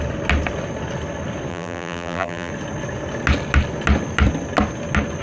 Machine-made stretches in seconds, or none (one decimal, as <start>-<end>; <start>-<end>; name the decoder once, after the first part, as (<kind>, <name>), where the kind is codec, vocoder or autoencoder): 1.5-2.5 (vocoder, BigVGAN v2)